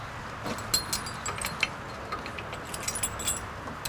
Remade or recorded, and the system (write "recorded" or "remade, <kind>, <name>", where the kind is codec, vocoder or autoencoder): recorded